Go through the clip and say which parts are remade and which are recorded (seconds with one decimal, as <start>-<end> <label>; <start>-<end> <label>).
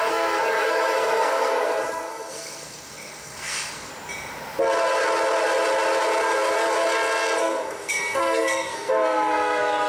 0.0-3.9 remade; 3.9-7.4 recorded; 7.4-9.9 remade